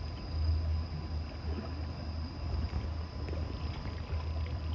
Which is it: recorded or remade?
recorded